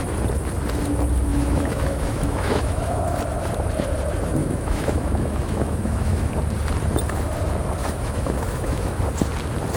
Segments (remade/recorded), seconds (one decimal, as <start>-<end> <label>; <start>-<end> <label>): 0.0-1.3 recorded; 1.3-3.2 remade; 3.2-4.4 recorded; 4.4-6.3 remade; 6.3-7.8 recorded; 7.8-9.0 remade; 9.0-9.8 recorded